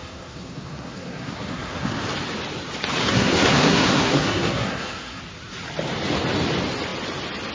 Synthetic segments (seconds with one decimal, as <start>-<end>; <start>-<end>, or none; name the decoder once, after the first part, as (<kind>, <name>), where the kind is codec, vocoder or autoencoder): 0.0-2.0 (codec, SNAC); 3.0-5.2